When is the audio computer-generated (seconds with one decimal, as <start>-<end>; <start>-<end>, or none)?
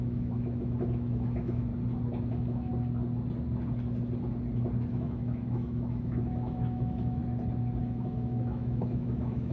0.0-1.7; 2.3-2.7; 4.9-7.2; 7.8-9.5